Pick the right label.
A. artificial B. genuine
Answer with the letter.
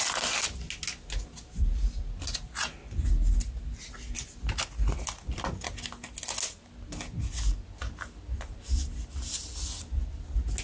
B